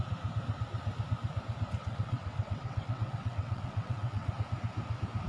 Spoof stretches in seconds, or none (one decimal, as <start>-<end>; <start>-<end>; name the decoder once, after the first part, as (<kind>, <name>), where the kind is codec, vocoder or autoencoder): 1.8-4.3 (vocoder, WaveNeXt)

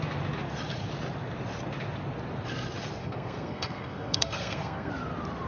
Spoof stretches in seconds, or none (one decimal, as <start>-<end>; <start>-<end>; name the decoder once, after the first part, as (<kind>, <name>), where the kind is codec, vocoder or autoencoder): 3.0-4.9 (codec, SNAC)

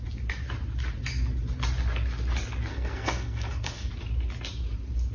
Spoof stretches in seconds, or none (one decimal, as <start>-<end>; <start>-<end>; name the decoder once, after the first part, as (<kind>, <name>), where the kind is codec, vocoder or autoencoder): 2.7-3.9 (codec, SNAC)

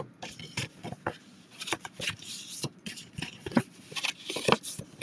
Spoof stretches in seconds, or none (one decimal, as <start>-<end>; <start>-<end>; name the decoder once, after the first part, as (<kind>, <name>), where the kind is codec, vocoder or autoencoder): 0.8-3.8 (vocoder, Vocos)

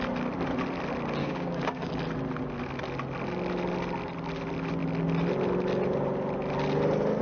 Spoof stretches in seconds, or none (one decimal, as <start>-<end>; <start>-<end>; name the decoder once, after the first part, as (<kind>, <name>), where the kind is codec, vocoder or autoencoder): 1.2-1.9 (codec, DAC)

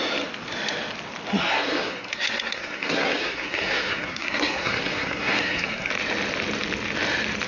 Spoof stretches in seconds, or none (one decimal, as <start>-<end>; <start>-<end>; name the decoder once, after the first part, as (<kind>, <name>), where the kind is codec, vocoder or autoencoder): 1.4-5.9 (codec, SNAC)

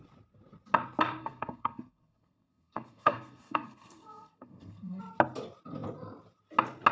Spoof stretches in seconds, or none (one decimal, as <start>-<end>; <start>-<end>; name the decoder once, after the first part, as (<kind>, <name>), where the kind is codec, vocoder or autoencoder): 1.2-5.0 (codec, SNAC)